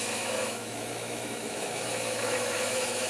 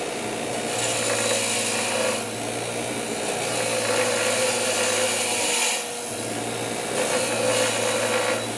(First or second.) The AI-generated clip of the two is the first